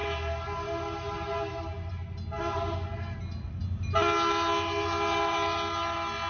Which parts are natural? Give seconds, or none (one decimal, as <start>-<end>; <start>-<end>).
0.0-6.3